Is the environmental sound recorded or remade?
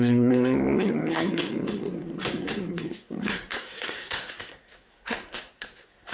remade